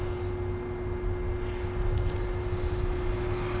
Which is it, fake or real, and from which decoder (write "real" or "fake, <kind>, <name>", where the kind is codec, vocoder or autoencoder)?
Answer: real